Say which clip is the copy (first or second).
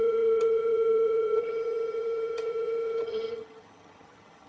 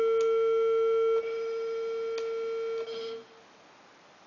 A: first